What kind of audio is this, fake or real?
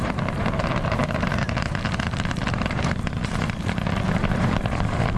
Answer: fake